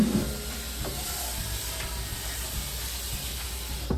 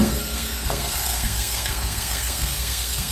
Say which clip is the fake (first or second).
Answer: second